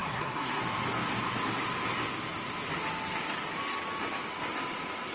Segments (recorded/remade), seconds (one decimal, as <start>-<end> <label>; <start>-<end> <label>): 0.0-0.6 remade; 0.6-5.1 recorded